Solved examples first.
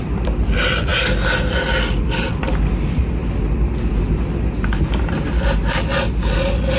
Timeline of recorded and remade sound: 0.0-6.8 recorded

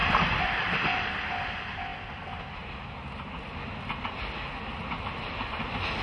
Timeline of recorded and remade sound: 0.0-1.3 remade; 1.3-6.0 recorded

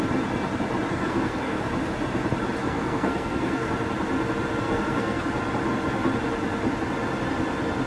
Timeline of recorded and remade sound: 0.0-0.9 recorded; 0.9-1.6 remade; 1.6-2.6 recorded; 2.6-3.7 remade; 3.7-4.6 recorded; 4.6-5.2 remade; 5.2-7.9 recorded

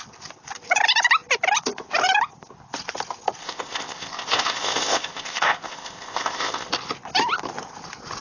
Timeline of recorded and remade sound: 0.0-3.4 recorded; 3.4-6.7 remade; 6.7-8.2 recorded

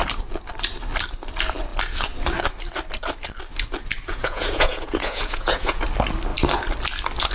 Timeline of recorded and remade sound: 0.0-4.1 recorded; 4.1-5.8 remade; 5.8-7.3 recorded

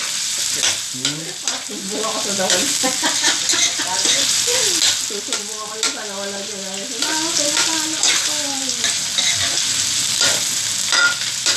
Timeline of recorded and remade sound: 0.0-11.6 recorded

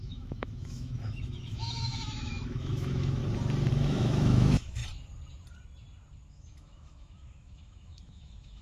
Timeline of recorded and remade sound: 0.0-3.2 remade; 3.2-3.7 recorded; 3.7-4.8 remade; 4.8-6.3 recorded; 6.3-8.6 remade